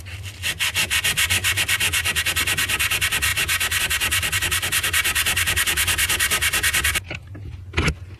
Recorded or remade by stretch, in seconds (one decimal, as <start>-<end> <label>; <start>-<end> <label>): 0.0-8.2 recorded